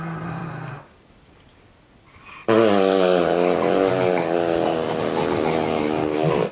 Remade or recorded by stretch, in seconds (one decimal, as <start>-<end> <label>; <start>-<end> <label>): 0.0-6.5 recorded